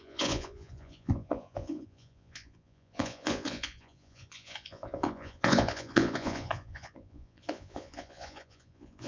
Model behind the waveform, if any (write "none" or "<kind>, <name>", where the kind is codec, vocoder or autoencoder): vocoder, Vocos